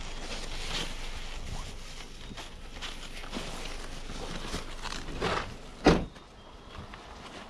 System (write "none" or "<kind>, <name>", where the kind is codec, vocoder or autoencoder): none